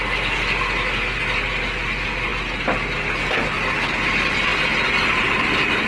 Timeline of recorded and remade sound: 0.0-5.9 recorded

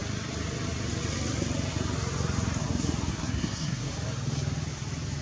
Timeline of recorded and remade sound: 0.0-3.1 recorded; 3.1-3.9 remade; 3.9-5.2 recorded

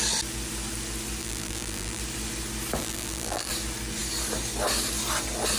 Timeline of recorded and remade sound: 0.0-1.2 recorded; 1.2-2.0 remade; 2.0-2.8 recorded; 2.8-3.5 remade; 3.5-5.6 recorded

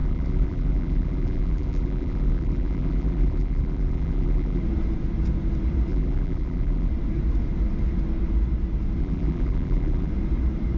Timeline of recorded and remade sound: 0.0-4.6 remade; 4.6-5.9 recorded; 5.9-6.9 remade; 6.9-9.0 recorded; 9.0-10.1 remade; 10.1-10.8 recorded

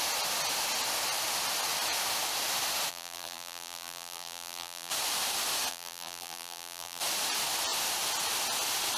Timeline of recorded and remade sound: 0.0-2.9 recorded; 2.9-4.9 remade; 4.9-5.7 recorded; 5.7-7.0 remade; 7.0-9.0 recorded

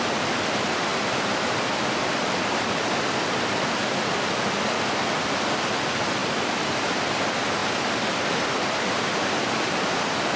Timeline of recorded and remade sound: 0.0-10.4 recorded

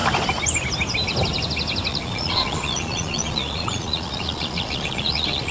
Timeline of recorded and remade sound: 0.0-1.9 recorded; 1.9-5.5 remade

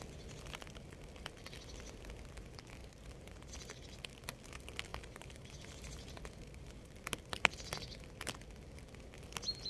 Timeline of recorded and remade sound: 0.0-2.8 recorded; 2.8-3.5 remade; 3.5-4.9 recorded; 4.9-6.7 remade; 6.7-9.7 recorded